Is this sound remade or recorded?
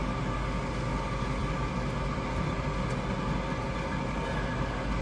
recorded